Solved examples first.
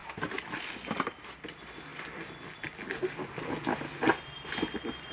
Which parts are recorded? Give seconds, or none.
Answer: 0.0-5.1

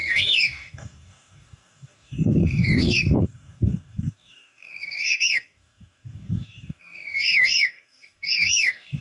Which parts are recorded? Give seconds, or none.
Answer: none

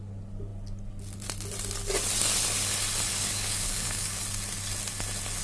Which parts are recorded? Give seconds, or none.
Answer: 0.0-3.1; 4.2-5.4

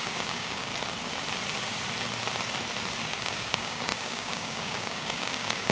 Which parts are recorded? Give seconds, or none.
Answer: 0.7-3.2

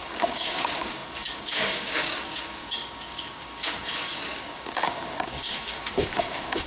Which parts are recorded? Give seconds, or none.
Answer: none

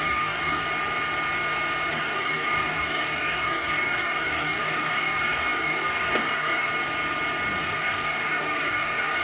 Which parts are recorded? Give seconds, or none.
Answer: 0.6-1.9; 6.7-7.6